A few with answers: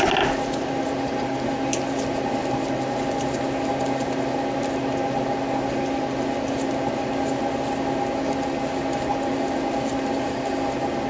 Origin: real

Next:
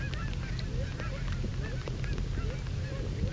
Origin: real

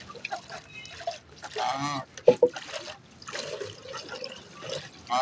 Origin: real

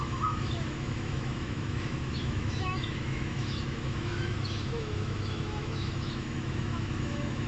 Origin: fake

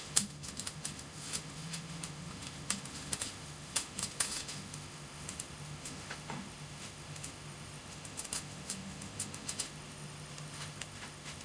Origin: fake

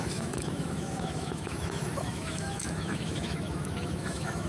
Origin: fake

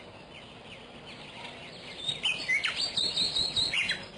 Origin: real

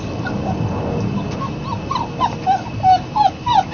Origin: real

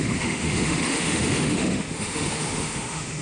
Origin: fake